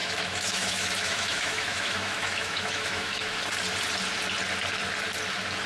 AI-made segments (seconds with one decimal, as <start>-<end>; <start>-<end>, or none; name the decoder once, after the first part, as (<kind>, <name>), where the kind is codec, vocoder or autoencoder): 0.0-3.4 (autoencoder, DAC-VAE)